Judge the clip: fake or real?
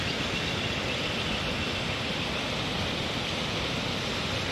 real